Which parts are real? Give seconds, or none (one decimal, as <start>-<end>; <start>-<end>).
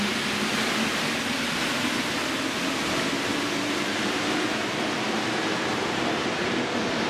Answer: 0.0-7.1